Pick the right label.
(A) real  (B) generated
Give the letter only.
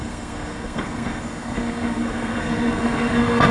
B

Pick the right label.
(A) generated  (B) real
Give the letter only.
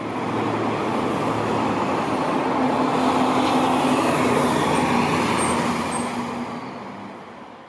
B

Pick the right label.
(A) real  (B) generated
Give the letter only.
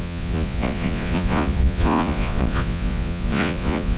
B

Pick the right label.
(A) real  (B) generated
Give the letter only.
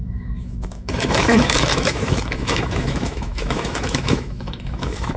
B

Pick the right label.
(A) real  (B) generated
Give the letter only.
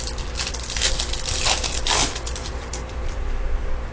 B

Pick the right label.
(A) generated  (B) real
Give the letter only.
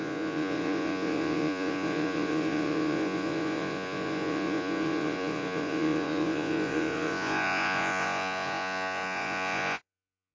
A